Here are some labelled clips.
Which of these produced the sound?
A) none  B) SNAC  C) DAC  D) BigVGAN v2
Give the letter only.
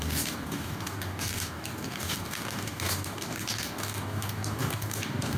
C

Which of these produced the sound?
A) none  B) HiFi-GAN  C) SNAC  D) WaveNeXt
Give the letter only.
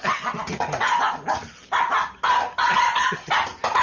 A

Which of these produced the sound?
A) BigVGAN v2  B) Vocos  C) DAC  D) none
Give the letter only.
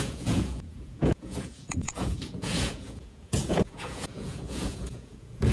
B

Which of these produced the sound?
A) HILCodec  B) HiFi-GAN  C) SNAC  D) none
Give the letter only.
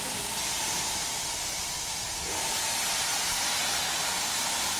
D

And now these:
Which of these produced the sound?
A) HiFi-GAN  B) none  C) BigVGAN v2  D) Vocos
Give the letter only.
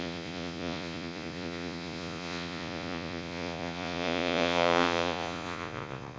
D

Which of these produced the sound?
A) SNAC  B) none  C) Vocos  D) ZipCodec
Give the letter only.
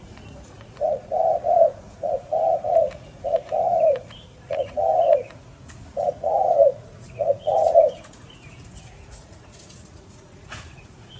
C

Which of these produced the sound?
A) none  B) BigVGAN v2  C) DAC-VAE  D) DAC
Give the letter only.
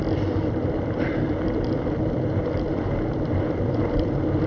B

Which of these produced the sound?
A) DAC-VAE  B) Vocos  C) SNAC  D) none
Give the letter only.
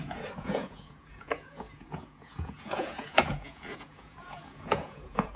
B